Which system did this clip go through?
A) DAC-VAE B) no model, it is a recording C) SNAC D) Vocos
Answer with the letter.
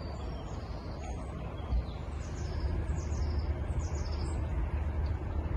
B